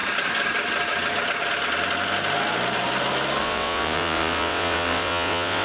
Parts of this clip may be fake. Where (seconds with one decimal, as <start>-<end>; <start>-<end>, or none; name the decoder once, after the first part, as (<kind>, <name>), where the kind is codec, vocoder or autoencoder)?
3.4-5.6 (vocoder, WaveNeXt)